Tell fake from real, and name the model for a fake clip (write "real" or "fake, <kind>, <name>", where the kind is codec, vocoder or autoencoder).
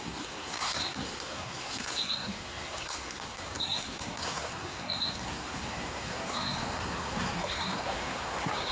fake, codec, SNAC